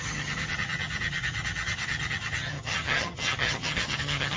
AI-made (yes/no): yes